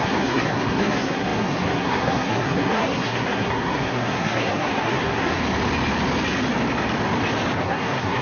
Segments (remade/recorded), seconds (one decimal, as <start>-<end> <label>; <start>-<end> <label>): 0.0-5.4 remade; 5.4-7.6 recorded; 7.6-8.2 remade